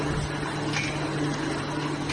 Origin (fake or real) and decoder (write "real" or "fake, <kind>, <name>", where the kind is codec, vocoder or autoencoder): real